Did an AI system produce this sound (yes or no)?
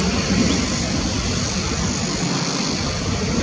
no